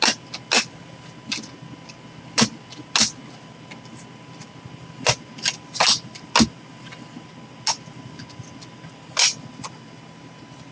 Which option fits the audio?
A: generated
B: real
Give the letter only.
B